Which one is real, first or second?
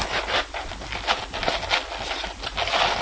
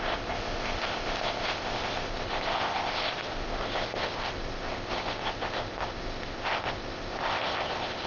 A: first